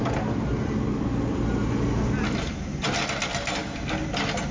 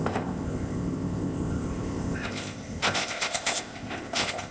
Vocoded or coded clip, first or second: second